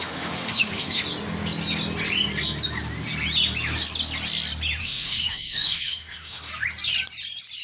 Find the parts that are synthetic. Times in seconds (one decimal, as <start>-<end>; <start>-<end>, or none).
0.0-1.0; 4.8-6.5